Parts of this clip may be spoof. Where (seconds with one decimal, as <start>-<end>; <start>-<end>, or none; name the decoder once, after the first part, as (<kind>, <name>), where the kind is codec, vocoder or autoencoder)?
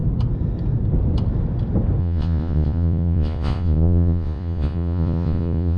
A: 2.0-5.8 (vocoder, Vocos)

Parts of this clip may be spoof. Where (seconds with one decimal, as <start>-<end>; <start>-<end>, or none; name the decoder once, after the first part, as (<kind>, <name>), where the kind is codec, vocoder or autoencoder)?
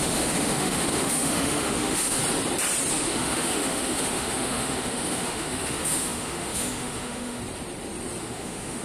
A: 0.0-2.2 (autoencoder, DAC-VAE); 2.9-7.4; 8.2-8.8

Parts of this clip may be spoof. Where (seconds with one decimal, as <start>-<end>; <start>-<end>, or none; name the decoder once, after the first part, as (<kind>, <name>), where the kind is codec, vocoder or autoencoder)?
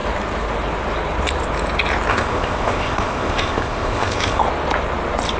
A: 2.1-4.4 (codec, ZipCodec)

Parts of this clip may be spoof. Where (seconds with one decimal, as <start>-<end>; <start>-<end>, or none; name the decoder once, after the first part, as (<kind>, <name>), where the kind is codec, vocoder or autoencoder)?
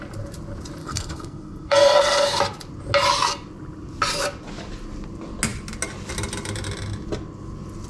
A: 0.8-2.4 (codec, SNAC)